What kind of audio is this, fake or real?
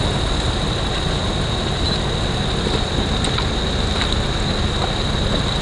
real